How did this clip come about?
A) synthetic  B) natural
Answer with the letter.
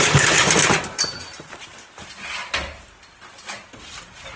B